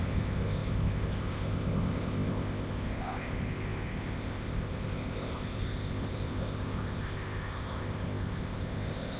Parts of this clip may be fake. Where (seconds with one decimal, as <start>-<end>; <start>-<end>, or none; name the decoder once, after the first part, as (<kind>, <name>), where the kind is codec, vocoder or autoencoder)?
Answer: 0.0-9.2 (codec, ZipCodec)